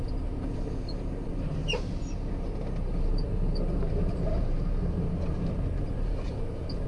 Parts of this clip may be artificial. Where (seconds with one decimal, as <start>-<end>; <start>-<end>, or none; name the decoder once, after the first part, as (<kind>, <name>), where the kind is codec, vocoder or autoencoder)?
none